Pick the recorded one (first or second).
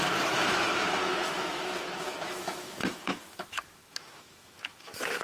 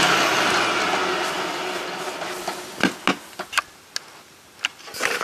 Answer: second